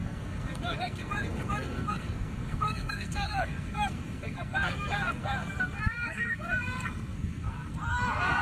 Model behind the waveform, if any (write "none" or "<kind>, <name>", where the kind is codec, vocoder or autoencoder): codec, SNAC